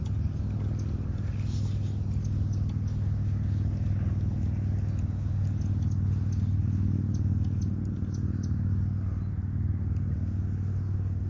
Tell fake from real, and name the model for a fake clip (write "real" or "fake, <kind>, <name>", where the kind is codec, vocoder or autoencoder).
real